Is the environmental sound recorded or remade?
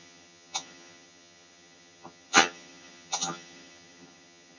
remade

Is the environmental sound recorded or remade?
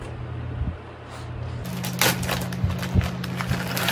recorded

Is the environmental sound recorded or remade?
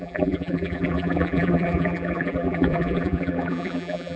remade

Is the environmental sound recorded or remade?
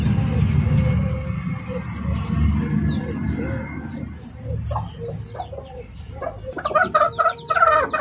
recorded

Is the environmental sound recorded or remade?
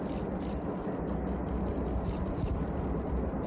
recorded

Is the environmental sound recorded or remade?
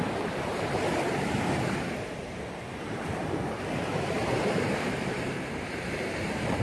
remade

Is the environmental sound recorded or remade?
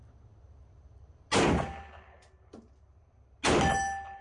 recorded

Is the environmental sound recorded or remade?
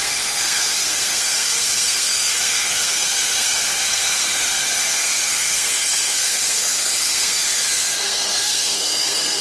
remade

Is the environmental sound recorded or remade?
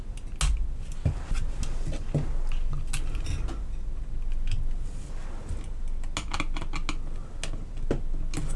recorded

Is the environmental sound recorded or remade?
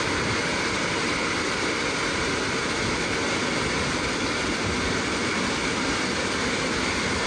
recorded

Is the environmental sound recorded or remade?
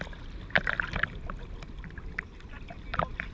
recorded